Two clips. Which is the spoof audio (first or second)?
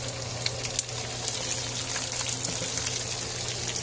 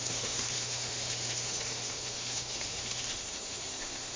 second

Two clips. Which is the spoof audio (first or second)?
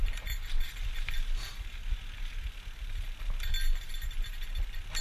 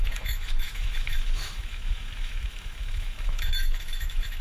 second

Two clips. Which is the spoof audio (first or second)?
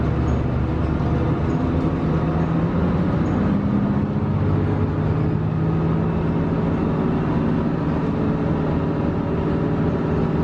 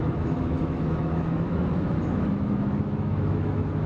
second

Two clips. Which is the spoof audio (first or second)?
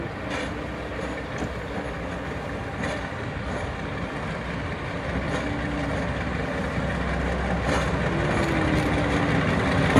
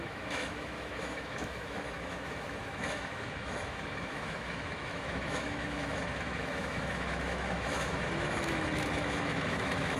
second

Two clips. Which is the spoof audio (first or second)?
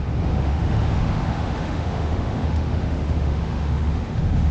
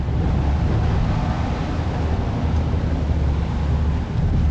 first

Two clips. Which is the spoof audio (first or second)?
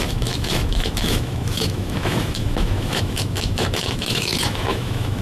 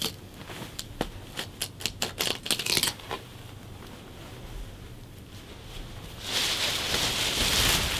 first